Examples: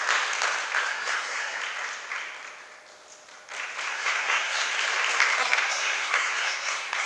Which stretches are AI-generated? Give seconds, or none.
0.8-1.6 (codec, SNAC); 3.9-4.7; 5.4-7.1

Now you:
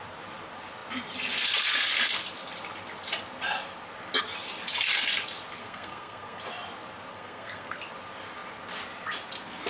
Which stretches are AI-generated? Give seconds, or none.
5.6-6.4 (codec, SNAC); 7.1-7.8

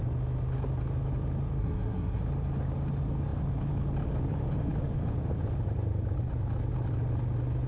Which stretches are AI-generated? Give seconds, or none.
1.6-2.2 (codec, SNAC)

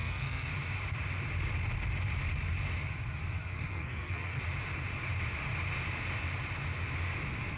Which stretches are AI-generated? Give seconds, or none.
0.0-0.5 (codec, SNAC); 3.5-4.4

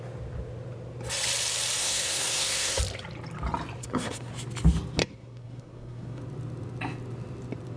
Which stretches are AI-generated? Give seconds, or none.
1.8-2.8 (codec, SNAC); 3.8-4.3; 5.0-6.2